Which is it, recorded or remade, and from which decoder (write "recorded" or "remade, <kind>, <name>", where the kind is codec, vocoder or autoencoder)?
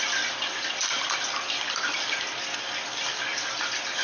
recorded